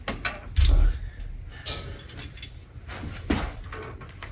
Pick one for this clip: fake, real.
real